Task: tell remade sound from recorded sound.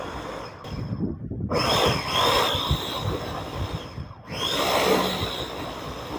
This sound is recorded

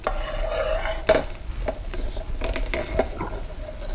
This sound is recorded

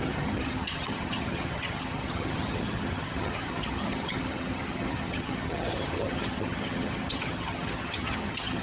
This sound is remade